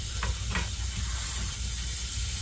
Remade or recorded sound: recorded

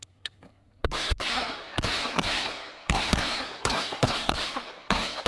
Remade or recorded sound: remade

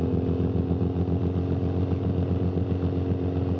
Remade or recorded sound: recorded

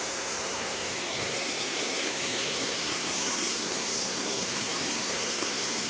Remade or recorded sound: remade